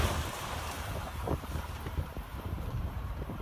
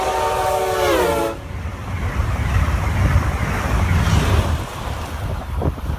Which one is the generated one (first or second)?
first